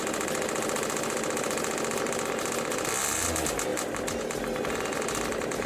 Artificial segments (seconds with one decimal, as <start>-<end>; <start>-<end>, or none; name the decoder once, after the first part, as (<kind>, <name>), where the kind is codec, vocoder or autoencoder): none